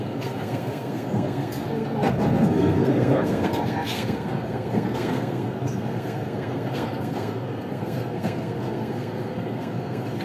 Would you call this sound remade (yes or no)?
yes